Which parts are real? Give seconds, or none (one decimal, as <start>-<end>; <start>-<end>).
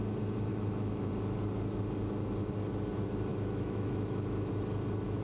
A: 0.0-0.5; 1.1-3.3; 4.5-5.2